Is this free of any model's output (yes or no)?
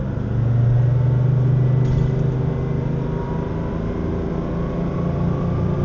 yes